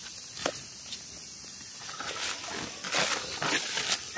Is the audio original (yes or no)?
yes